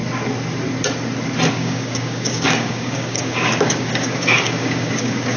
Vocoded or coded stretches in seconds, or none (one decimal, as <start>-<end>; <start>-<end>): 1.5-5.4